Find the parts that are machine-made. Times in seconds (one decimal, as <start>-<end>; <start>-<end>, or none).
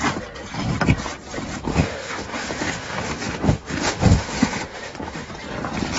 1.7-5.3